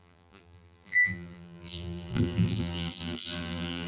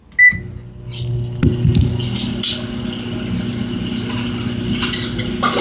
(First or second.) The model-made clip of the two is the first